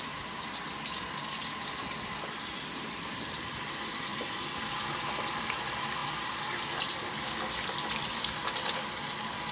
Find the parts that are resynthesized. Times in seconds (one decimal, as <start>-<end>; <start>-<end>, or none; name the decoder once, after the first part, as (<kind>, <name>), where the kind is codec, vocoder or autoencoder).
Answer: none